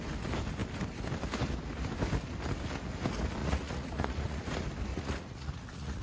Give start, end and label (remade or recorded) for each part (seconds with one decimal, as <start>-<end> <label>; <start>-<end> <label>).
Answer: 0.0-3.4 recorded; 3.4-4.5 remade; 4.5-4.9 recorded; 4.9-6.0 remade